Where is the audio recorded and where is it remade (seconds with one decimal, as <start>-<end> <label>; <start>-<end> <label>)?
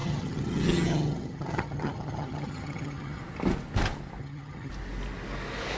0.0-3.2 remade; 3.2-4.2 recorded; 4.2-4.7 remade; 4.7-5.8 recorded